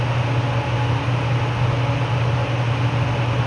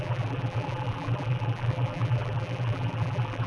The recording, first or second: first